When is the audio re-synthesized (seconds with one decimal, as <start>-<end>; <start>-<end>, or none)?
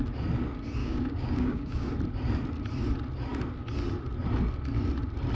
0.8-1.9